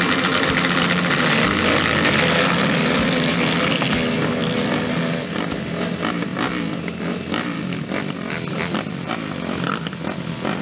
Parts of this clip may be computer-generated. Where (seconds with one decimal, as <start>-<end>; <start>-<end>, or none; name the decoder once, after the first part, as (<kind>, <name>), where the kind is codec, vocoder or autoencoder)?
none

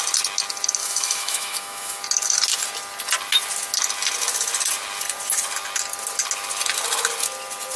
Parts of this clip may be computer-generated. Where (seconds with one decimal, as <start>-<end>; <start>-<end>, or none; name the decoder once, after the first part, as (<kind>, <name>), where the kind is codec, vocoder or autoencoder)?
0.8-2.0 (autoencoder, DAC-VAE)

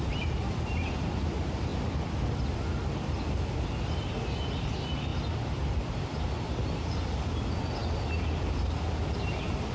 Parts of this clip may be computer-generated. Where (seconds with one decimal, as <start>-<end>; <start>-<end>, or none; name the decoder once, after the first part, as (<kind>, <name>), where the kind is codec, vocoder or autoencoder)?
none

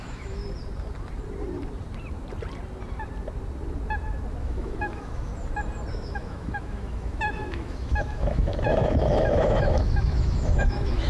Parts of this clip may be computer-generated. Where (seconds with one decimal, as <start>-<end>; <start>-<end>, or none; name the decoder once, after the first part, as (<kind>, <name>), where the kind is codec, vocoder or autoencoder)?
0.0-0.4 (autoencoder, DAC-VAE); 4.4-5.3; 5.9-11.1

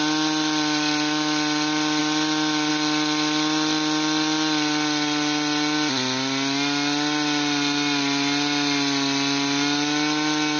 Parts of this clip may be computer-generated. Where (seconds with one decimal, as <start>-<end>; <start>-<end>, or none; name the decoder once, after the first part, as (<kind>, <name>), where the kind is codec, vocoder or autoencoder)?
none